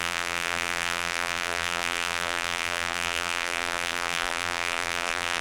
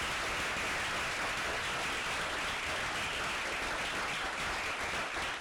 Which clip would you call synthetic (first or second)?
first